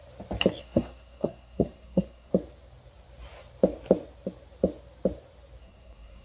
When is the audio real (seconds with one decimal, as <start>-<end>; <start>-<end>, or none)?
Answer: 0.0-0.6; 2.3-5.6